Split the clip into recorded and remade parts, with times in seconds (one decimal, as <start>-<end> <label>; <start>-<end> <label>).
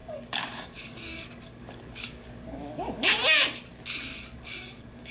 0.0-3.1 remade; 3.1-4.1 recorded; 4.1-5.1 remade